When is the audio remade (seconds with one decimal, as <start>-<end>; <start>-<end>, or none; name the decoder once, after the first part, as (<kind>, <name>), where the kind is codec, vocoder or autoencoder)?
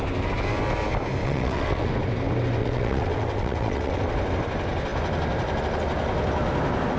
1.2-1.9 (vocoder, WaveNeXt); 2.6-4.0